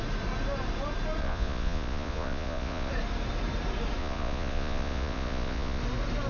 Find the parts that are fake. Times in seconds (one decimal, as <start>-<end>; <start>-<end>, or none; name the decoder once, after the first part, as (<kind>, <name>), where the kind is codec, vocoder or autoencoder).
1.2-2.9 (vocoder, Vocos); 4.0-5.8